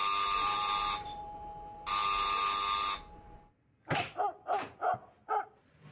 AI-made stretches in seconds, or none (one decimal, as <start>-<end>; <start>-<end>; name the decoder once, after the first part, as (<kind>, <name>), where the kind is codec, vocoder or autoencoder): none